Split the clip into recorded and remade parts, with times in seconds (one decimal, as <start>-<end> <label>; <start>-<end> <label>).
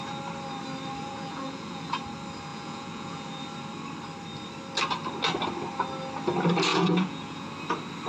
0.0-1.0 recorded; 1.0-1.9 remade; 1.9-2.5 recorded; 2.5-3.4 remade; 3.4-6.7 recorded; 6.7-7.5 remade; 7.5-8.1 recorded